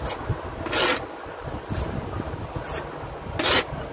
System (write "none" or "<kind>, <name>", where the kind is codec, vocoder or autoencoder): none